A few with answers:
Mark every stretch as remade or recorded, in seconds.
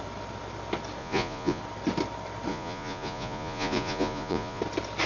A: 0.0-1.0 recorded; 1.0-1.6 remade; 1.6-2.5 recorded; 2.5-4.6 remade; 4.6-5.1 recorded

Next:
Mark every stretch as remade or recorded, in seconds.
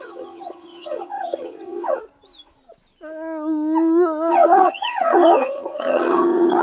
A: 0.0-2.0 remade; 2.0-4.3 recorded; 4.3-6.6 remade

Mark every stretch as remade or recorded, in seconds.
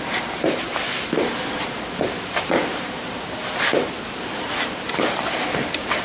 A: 0.0-0.7 remade; 0.7-2.3 recorded; 2.3-6.0 remade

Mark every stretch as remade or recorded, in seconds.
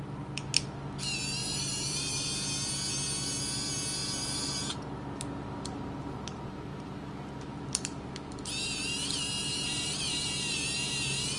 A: 0.0-1.4 recorded; 1.4-2.3 remade; 2.3-4.0 recorded; 4.0-4.8 remade; 4.8-6.7 recorded; 6.7-11.4 remade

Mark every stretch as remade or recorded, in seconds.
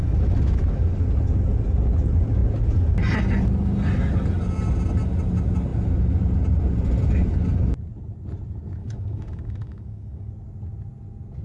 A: 0.0-8.8 recorded; 8.8-10.3 remade; 10.3-11.4 recorded